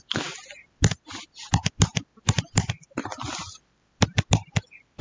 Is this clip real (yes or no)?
yes